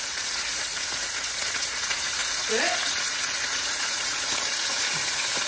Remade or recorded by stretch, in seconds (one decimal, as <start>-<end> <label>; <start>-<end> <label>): 0.0-5.5 remade